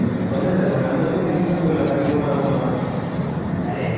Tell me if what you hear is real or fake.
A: real